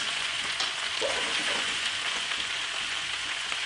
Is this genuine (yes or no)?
no